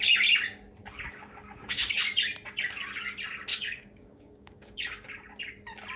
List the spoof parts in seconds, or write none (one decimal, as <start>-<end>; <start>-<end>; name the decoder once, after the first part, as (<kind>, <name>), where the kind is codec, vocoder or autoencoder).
0.8-2.0 (codec, DAC); 3.5-5.1